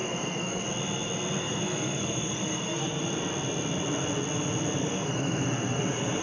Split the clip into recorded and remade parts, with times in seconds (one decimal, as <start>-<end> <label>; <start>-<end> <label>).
0.0-0.6 remade; 0.6-1.4 recorded; 1.4-3.0 remade; 3.0-4.8 recorded; 4.8-5.8 remade; 5.8-6.2 recorded